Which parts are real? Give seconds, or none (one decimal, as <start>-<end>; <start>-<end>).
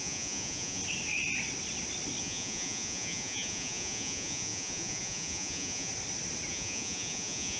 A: 0.8-2.2; 5.9-6.5